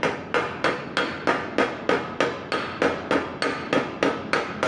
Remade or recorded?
recorded